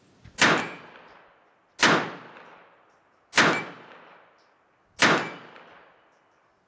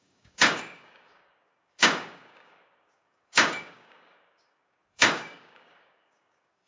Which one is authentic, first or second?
first